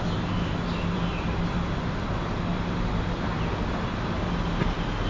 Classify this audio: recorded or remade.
recorded